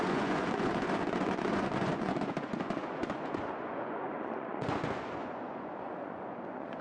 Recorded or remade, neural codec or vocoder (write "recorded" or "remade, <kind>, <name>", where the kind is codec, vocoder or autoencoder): remade, vocoder, Vocos